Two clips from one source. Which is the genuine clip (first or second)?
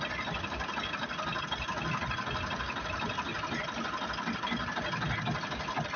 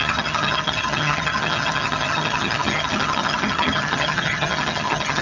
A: first